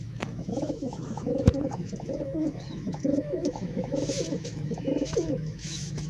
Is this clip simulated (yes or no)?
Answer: yes